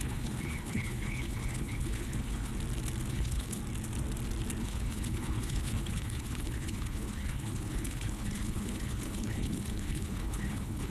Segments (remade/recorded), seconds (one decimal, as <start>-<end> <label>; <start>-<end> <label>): 0.0-2.5 remade; 2.5-3.1 recorded; 3.1-3.6 remade; 3.6-4.6 recorded; 4.6-10.9 remade